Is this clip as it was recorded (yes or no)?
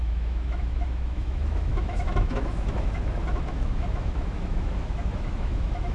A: no